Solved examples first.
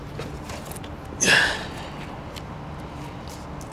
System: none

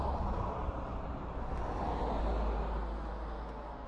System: none